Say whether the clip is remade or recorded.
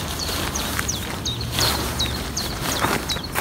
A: remade